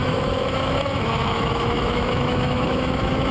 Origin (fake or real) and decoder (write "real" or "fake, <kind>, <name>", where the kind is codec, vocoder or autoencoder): fake, autoencoder, DAC-VAE